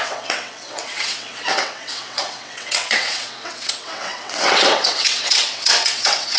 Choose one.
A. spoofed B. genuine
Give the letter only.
A